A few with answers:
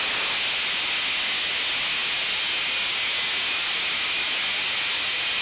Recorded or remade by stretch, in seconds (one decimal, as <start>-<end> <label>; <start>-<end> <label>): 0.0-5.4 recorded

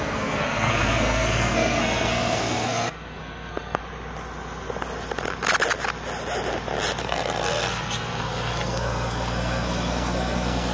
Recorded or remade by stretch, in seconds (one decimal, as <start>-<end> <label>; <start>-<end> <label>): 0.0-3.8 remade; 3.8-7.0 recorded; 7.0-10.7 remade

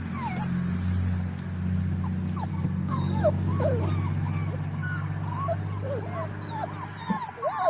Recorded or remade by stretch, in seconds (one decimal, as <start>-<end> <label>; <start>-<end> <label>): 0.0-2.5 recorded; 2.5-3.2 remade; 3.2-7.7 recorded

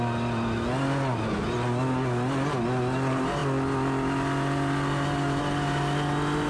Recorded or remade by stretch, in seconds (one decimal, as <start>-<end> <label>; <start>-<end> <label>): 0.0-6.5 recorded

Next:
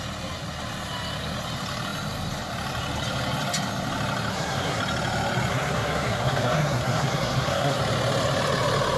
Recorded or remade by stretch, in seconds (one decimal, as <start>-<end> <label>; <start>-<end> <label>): 0.0-4.3 recorded; 4.3-4.8 remade; 4.8-5.5 recorded; 5.5-7.8 remade; 7.8-9.0 recorded